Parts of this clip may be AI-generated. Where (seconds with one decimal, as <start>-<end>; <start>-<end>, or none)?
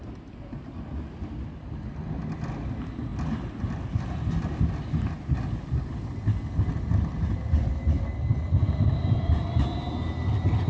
8.6-9.3